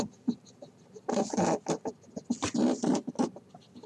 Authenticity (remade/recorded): recorded